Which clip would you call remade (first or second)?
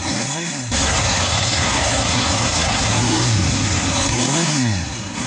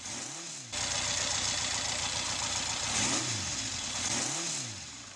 first